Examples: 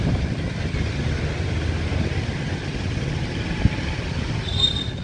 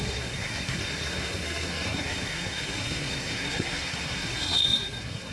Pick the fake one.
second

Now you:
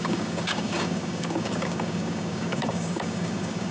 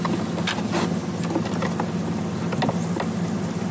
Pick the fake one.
first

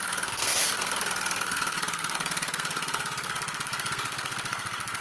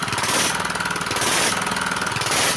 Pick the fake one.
first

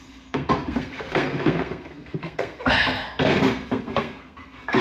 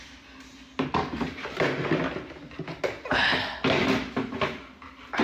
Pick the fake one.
first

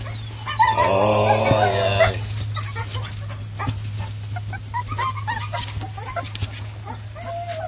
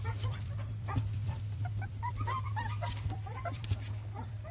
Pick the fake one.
second